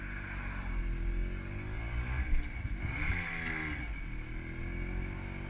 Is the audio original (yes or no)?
yes